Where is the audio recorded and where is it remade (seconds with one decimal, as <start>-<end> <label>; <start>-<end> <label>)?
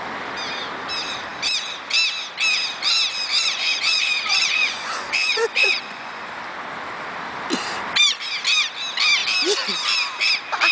0.0-3.3 recorded; 3.3-6.2 remade; 6.2-10.7 recorded